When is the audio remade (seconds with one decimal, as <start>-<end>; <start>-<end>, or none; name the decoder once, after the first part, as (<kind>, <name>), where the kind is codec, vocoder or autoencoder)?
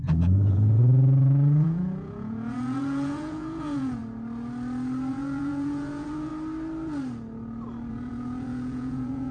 0.0-4.0 (vocoder, Vocos); 5.1-6.3; 7.9-9.3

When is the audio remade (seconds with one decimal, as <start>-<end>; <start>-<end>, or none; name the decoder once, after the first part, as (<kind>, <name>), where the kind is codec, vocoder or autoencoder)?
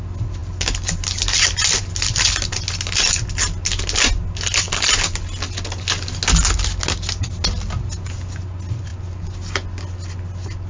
none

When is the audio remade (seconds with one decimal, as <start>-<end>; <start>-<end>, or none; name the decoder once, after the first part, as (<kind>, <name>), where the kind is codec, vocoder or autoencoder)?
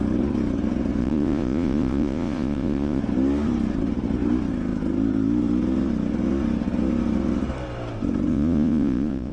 1.0-3.0 (vocoder, Vocos); 8.3-9.3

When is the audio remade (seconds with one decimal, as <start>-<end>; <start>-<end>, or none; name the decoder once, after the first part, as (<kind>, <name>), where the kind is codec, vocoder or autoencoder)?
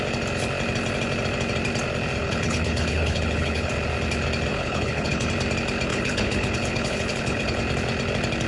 2.2-3.7 (codec, HILCodec); 4.5-5.3; 5.9-7.6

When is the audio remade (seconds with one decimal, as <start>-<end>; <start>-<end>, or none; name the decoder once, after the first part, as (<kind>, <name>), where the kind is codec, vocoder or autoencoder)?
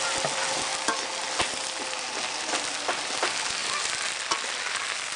none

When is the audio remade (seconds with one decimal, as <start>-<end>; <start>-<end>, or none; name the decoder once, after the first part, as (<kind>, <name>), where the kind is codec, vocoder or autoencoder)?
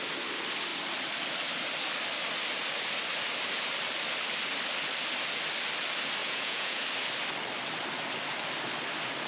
6.2-6.8 (vocoder, Vocos)